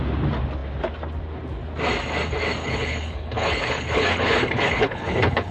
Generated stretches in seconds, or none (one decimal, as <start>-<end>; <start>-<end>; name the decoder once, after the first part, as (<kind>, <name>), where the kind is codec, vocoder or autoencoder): 2.6-5.5 (codec, HILCodec)